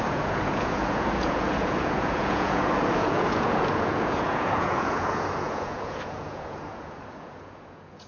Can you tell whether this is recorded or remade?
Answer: remade